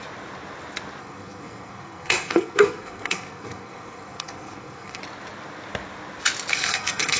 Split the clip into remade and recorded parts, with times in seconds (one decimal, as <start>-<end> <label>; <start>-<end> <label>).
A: 0.0-1.0 recorded; 1.0-5.0 remade; 5.0-6.5 recorded; 6.5-7.2 remade